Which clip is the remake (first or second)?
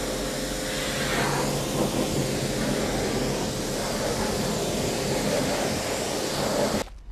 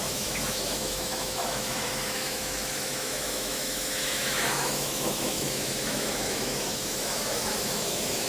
second